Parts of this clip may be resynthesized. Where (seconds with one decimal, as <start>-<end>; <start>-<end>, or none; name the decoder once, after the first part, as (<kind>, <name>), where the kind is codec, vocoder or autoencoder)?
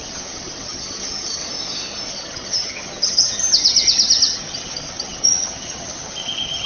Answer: 0.0-1.4 (vocoder, HiFi-GAN); 2.1-6.7